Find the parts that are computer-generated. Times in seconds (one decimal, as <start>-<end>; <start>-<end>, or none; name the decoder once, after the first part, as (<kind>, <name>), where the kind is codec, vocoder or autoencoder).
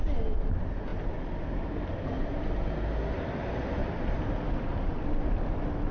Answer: 3.8-5.0 (vocoder, BigVGAN v2)